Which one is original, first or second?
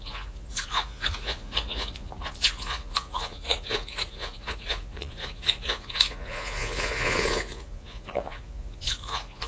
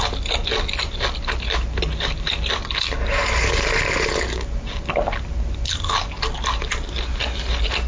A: second